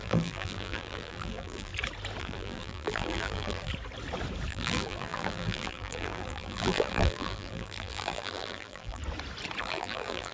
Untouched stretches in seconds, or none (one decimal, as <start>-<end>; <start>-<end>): 1.7-2.2; 3.7-4.5; 9.0-9.6